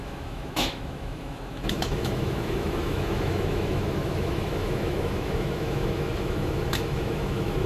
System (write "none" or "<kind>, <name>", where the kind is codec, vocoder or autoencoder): autoencoder, DAC-VAE